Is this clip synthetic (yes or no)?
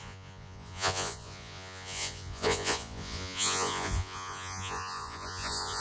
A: yes